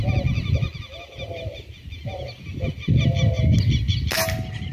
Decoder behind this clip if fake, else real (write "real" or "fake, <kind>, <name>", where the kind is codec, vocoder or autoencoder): real